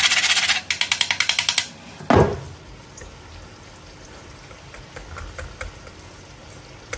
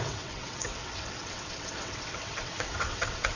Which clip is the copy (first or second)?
second